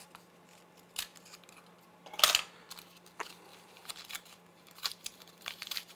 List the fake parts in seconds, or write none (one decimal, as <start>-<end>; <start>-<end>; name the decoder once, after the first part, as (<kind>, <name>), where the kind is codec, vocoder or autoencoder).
3.5-6.0 (vocoder, BigVGAN v2)